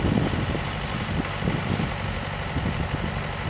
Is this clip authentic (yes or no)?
yes